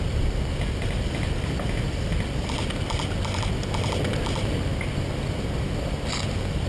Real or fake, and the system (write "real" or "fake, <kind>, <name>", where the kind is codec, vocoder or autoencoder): real